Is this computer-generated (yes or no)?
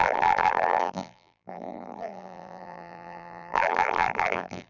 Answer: yes